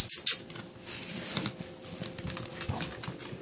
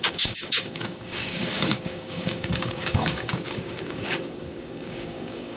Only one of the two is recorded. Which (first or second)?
first